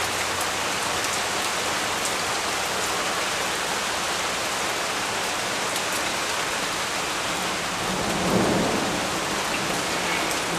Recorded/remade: recorded